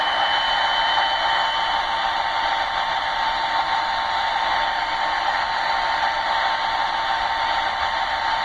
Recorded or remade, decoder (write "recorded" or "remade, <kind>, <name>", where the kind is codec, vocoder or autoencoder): recorded